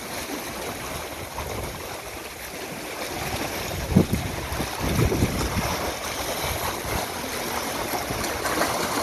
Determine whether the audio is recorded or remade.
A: recorded